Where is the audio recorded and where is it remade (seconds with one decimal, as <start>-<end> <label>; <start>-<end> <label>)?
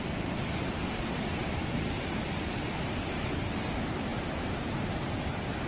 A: 0.0-1.6 recorded; 1.6-2.3 remade; 2.3-5.7 recorded